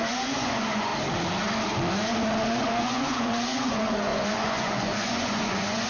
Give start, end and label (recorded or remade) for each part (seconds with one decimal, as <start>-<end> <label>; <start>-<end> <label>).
0.0-0.9 remade; 0.9-2.8 recorded; 2.8-5.9 remade